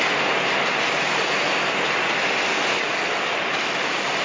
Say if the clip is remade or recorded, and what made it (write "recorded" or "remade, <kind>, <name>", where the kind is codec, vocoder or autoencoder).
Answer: recorded